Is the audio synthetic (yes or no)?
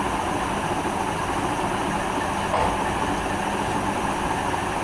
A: no